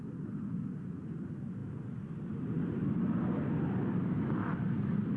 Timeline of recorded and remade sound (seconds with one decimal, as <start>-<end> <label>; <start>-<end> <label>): 0.0-5.2 recorded